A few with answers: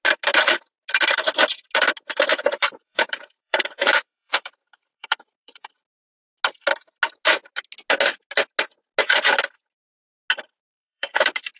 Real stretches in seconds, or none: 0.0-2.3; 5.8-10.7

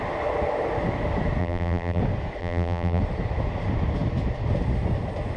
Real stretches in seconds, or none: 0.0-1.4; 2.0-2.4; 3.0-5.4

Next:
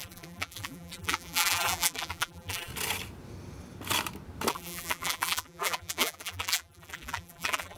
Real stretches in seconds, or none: 2.7-4.5

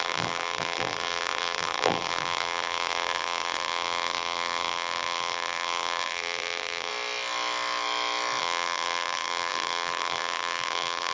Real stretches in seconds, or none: 6.9-8.4

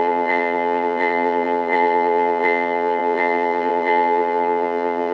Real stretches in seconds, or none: none

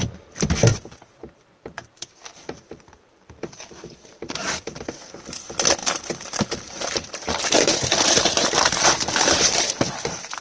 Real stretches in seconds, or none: 0.0-0.7; 5.2-5.8